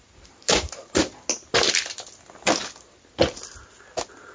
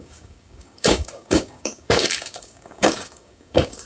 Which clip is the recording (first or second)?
first